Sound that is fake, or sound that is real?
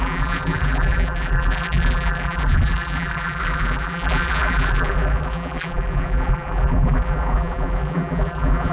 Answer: fake